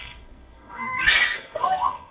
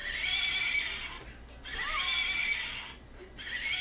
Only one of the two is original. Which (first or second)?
second